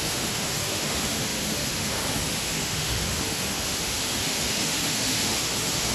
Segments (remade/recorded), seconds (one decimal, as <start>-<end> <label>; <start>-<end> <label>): 0.0-5.9 remade